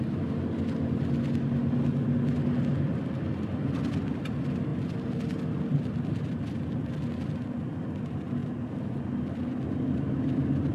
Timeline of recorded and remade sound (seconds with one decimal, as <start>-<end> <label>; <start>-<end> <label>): 0.0-10.7 recorded